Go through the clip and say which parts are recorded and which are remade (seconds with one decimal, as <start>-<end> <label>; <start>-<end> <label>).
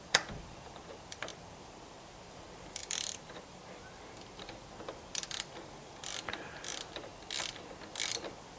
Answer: 0.0-7.1 remade; 7.1-8.1 recorded; 8.1-8.6 remade